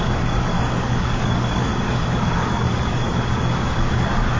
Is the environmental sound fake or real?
fake